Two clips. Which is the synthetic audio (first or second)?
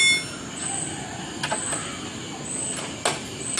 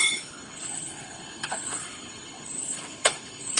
second